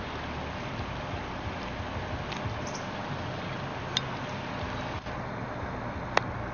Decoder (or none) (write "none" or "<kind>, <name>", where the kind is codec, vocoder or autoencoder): none